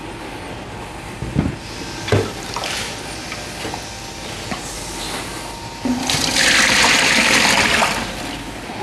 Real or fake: real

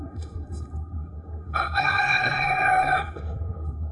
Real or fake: fake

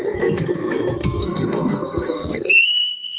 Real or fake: fake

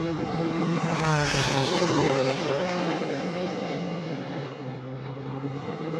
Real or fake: fake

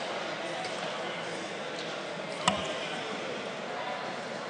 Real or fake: real